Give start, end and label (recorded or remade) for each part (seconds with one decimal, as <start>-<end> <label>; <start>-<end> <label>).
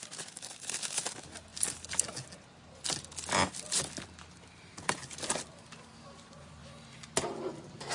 0.0-7.9 recorded